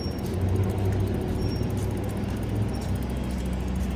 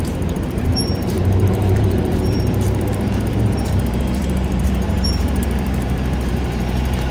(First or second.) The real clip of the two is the first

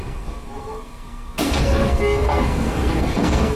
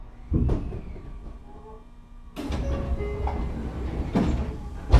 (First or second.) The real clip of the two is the second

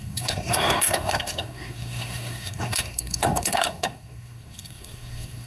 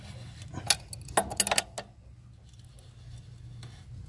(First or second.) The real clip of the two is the second